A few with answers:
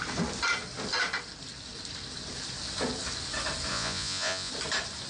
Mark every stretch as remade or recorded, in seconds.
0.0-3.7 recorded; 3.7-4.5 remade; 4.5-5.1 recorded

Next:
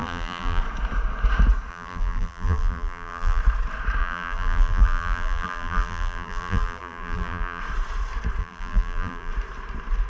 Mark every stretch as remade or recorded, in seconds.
0.0-0.6 remade; 0.6-1.7 recorded; 1.7-3.4 remade; 3.4-4.0 recorded; 4.0-7.6 remade; 7.6-8.4 recorded; 8.4-9.3 remade; 9.3-10.1 recorded

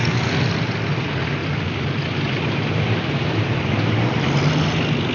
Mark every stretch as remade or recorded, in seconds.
0.0-5.1 recorded

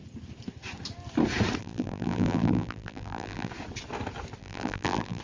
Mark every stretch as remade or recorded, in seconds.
0.0-1.6 recorded; 1.6-3.5 remade; 3.5-4.4 recorded; 4.4-5.2 remade